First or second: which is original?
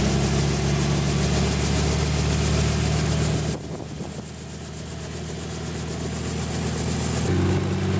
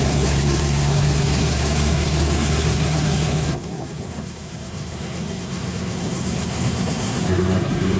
first